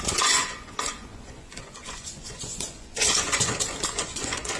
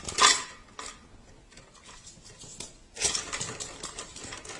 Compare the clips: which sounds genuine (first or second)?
second